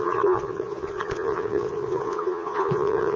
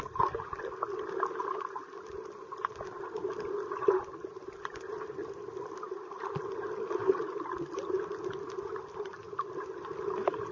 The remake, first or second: first